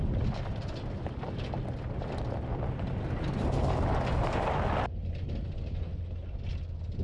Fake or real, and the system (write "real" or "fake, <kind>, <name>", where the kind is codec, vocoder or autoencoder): real